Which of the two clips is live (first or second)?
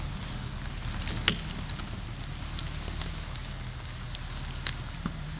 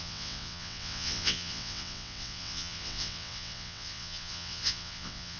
first